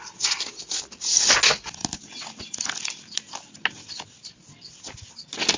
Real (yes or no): yes